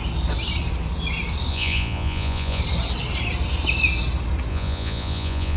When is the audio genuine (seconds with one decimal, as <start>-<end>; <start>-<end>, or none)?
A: 0.0-1.5; 2.6-4.5